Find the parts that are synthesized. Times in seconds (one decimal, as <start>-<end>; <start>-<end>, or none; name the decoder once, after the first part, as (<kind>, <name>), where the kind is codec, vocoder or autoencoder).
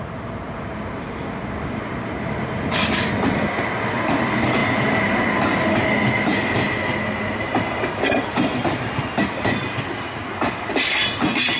none